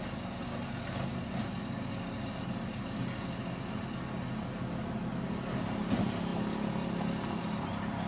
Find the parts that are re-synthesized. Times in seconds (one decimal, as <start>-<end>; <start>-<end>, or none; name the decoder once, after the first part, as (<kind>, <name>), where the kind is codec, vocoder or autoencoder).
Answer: none